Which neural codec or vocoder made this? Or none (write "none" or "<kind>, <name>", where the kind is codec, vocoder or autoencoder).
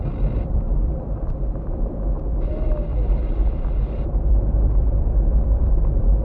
vocoder, BigVGAN v2